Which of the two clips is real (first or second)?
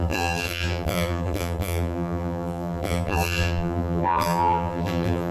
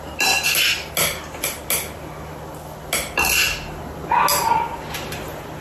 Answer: second